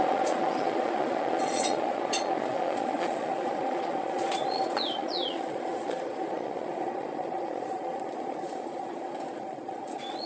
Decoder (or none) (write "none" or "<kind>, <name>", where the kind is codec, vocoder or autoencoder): vocoder, Vocos